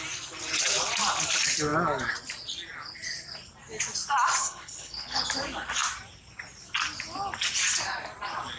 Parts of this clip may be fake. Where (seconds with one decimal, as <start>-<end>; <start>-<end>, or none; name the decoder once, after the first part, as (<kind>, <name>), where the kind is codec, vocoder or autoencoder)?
4.4-5.2 (codec, HILCodec)